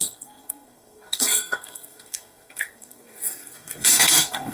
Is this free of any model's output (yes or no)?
no